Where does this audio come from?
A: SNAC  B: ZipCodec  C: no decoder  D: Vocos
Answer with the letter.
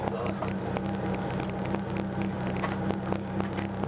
C